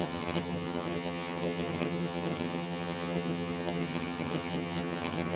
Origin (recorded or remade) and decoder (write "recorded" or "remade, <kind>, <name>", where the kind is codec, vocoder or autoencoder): remade, vocoder, HiFi-GAN